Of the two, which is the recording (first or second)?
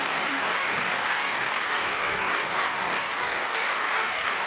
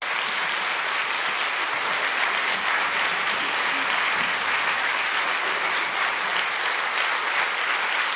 second